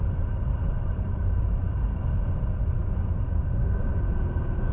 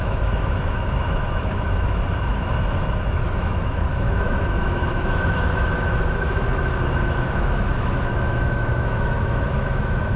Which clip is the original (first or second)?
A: first